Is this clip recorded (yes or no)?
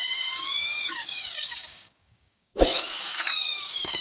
no